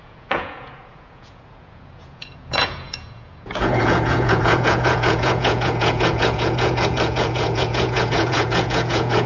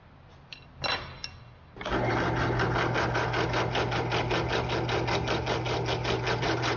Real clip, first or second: second